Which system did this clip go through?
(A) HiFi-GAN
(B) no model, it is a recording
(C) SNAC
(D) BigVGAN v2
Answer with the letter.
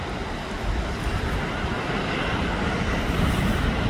B